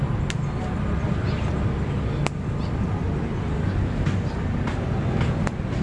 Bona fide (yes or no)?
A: yes